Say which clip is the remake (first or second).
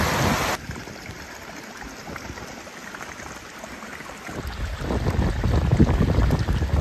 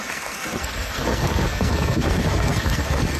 second